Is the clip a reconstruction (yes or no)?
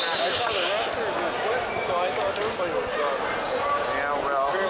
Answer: no